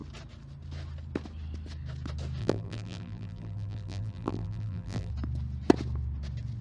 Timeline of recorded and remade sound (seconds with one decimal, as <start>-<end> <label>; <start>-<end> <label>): 0.0-2.4 recorded; 2.4-5.1 remade; 5.1-6.6 recorded